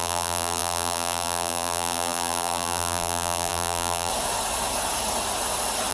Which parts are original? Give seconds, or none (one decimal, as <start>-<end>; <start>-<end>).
4.1-5.9